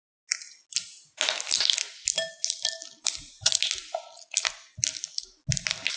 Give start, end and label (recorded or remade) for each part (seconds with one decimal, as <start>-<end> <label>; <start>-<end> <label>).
0.0-6.0 recorded